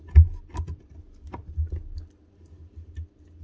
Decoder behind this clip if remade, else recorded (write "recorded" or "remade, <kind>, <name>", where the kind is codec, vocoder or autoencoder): recorded